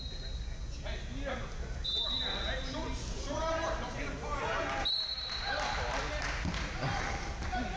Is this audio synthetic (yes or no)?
no